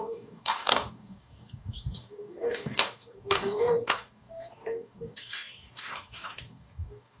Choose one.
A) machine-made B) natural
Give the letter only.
A